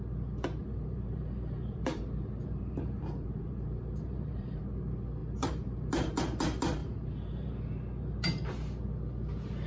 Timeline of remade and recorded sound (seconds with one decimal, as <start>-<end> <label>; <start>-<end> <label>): 0.0-0.6 recorded; 0.6-4.6 remade; 4.6-5.2 recorded; 5.2-5.9 remade; 5.9-6.8 recorded; 6.8-7.5 remade; 7.5-9.7 recorded